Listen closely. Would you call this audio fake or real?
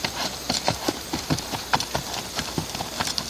fake